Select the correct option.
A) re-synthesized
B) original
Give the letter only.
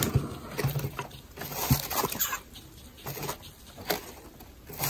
B